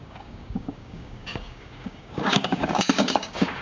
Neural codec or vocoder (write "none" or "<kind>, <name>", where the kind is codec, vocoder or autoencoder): codec, DAC